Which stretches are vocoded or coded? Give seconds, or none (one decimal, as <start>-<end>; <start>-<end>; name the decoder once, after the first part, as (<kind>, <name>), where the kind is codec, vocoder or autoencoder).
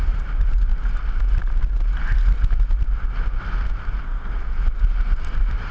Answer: 0.0-0.7 (vocoder, BigVGAN v2); 3.8-5.7